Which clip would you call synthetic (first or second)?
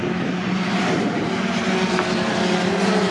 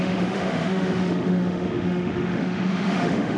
second